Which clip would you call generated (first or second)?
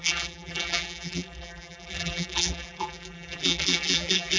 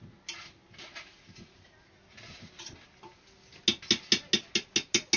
first